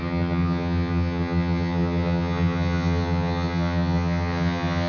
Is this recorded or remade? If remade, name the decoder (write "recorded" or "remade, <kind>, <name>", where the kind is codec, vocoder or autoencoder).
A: remade, vocoder, HiFi-GAN